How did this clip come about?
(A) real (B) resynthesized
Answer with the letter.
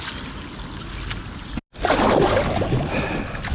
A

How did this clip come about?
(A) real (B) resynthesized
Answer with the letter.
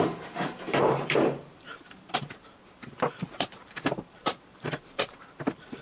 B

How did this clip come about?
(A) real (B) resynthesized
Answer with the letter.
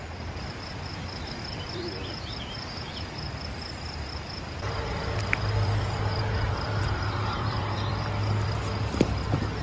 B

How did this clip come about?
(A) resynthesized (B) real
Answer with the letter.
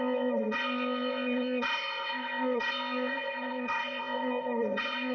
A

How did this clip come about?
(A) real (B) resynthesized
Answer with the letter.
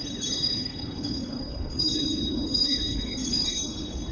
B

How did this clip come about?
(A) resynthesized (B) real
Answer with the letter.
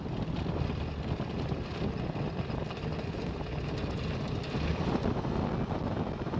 B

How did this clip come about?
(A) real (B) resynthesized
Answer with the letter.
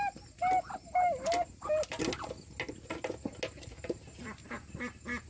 A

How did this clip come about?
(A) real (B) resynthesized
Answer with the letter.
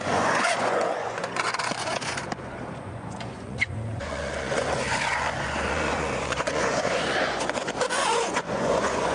B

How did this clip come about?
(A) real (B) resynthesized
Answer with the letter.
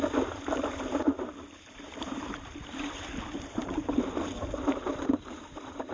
B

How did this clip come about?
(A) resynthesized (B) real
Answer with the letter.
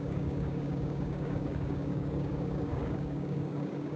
A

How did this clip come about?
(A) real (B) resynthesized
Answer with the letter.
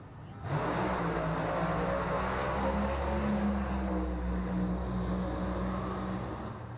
A